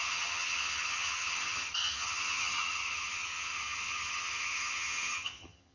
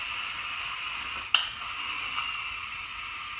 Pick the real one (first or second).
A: second